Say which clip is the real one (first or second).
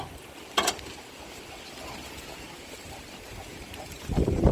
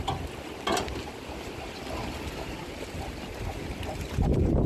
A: second